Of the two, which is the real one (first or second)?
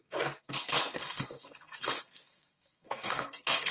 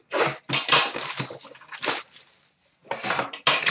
second